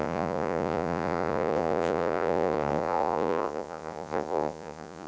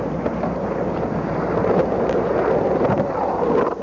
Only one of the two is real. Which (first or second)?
second